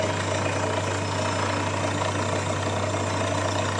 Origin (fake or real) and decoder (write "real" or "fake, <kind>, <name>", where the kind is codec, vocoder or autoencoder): real